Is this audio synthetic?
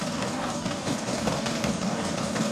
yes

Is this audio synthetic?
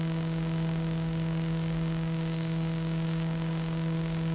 yes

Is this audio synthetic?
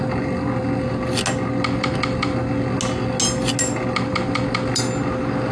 no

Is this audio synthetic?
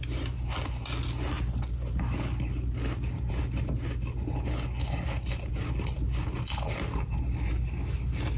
no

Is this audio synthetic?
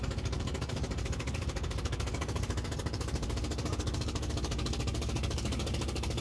yes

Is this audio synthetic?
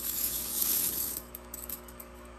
yes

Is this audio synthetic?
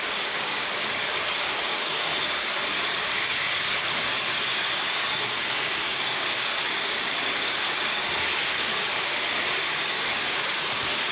yes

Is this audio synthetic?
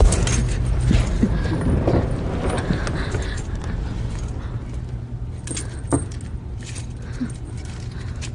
no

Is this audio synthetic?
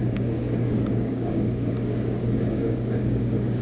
yes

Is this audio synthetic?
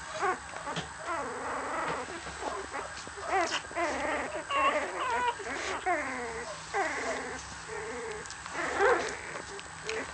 no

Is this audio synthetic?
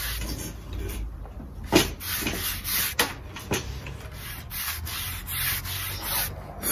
no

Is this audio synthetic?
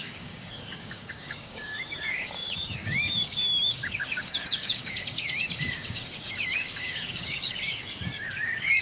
yes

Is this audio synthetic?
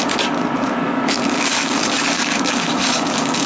yes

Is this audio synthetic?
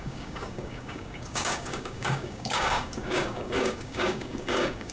yes